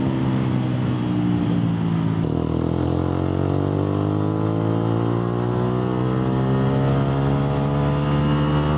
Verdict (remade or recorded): recorded